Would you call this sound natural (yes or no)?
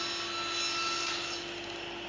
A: yes